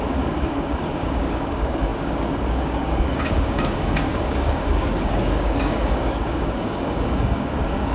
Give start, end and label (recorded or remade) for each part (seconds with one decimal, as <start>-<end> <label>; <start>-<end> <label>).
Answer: 0.0-7.9 remade